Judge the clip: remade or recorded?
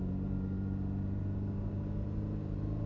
remade